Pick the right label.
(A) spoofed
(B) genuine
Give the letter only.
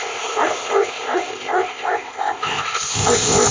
A